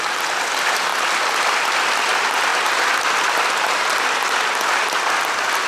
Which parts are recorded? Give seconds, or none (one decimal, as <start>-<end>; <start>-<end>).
0.0-5.7